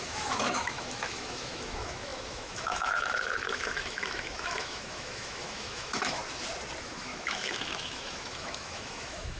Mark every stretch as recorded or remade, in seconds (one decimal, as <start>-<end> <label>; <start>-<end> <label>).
0.0-6.2 remade; 6.2-6.8 recorded; 6.8-9.4 remade